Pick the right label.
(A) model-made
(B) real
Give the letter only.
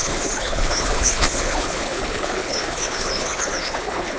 A